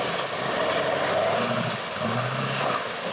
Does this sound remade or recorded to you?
recorded